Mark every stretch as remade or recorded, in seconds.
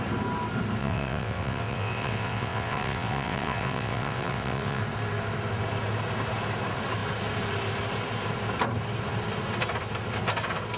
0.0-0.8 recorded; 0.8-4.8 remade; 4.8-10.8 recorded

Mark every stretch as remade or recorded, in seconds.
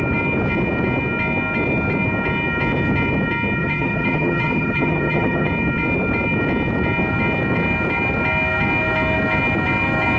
0.0-3.6 recorded; 3.6-5.5 remade; 5.5-10.2 recorded